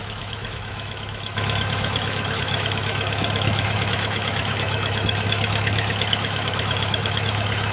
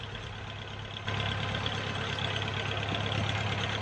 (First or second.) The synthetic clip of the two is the first